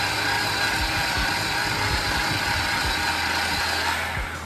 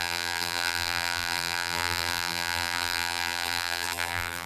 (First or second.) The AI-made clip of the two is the second